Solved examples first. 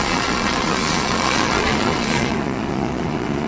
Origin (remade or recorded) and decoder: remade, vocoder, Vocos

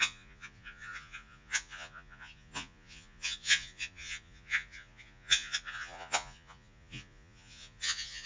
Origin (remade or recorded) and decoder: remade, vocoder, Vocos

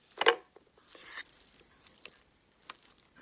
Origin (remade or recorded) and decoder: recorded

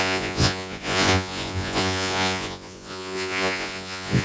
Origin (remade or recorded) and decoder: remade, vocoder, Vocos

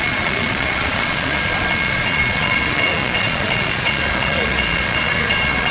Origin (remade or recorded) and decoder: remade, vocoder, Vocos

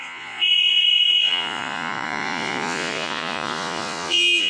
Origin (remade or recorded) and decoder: remade, vocoder, Vocos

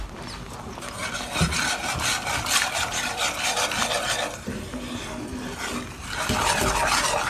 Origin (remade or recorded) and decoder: recorded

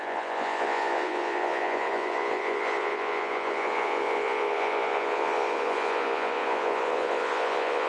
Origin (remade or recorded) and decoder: remade, vocoder, Vocos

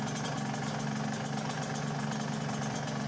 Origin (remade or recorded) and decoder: recorded